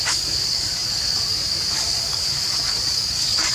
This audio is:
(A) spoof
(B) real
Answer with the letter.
A